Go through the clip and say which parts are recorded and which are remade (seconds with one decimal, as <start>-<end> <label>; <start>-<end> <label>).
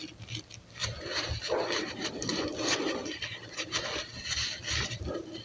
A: 0.0-0.8 remade; 0.8-1.4 recorded; 1.4-4.1 remade; 4.1-4.8 recorded; 4.8-5.4 remade